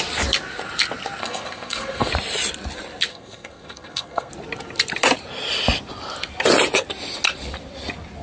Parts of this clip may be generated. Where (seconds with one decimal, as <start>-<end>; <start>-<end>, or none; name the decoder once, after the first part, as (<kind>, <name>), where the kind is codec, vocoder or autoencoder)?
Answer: 1.2-2.1 (codec, SNAC); 3.1-4.3